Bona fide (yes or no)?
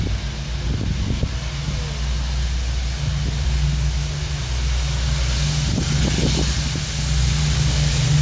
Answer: yes